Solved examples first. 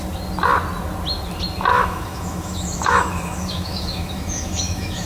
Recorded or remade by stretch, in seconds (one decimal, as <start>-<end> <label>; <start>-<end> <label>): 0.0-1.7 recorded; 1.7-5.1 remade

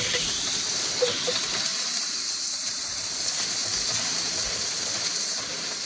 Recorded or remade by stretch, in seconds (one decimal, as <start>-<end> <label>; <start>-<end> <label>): 0.0-5.9 remade

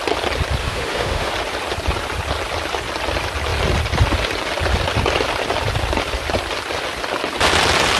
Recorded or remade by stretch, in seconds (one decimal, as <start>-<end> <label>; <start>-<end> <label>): 0.0-0.6 recorded; 0.6-1.3 remade; 1.3-8.0 recorded

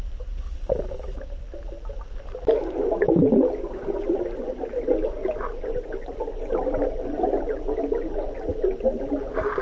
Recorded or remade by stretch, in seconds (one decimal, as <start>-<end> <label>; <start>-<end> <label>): 0.0-5.2 recorded; 5.2-7.4 remade; 7.4-9.6 recorded